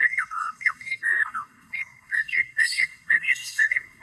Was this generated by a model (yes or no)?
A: yes